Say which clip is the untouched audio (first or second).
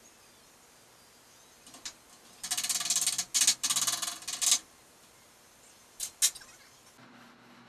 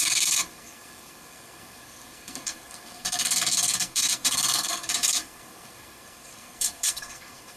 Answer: first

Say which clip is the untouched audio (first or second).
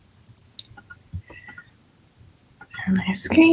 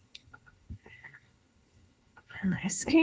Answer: first